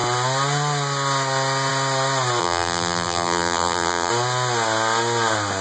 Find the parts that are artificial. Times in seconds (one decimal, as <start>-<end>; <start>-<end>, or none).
2.4-4.1